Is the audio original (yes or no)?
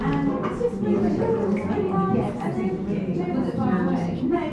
yes